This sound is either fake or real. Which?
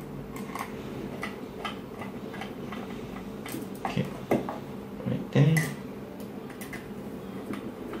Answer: real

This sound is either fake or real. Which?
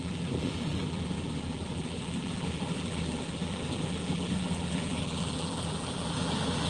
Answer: fake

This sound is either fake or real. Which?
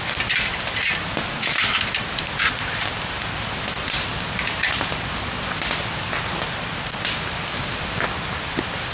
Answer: real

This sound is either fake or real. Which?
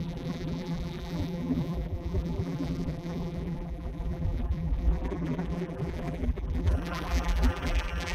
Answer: fake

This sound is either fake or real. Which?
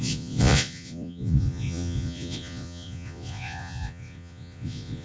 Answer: fake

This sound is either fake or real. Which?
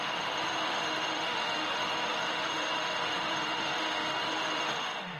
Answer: fake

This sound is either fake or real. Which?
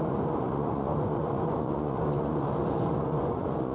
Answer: fake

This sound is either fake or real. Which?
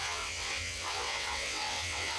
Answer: fake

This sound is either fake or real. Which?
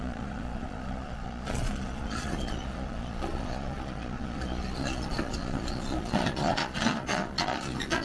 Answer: fake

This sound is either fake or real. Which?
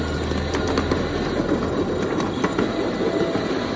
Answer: real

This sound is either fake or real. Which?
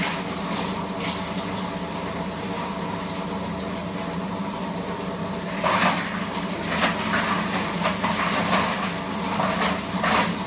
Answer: real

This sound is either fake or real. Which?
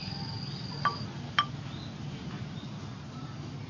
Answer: real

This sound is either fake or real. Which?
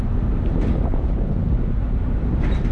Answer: fake